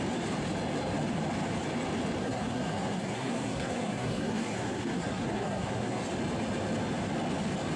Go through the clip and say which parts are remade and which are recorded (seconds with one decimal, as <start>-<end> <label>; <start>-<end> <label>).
0.0-2.2 recorded; 2.2-6.0 remade; 6.0-7.8 recorded